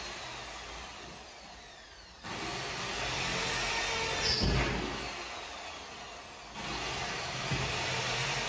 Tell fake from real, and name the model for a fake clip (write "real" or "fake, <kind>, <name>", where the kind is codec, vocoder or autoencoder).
real